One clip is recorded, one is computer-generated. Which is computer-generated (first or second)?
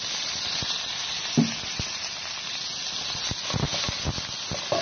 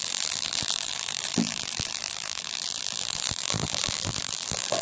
second